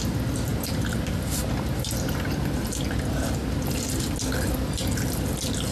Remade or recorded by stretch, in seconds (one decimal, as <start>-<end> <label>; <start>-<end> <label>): 0.0-5.7 recorded